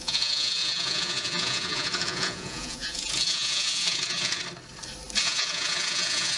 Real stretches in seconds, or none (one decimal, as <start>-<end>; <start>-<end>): 4.4-5.2